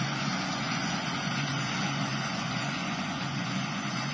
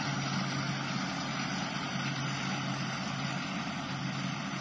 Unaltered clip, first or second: second